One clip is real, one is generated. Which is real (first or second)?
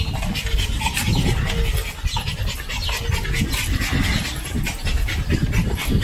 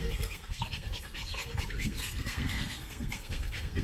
first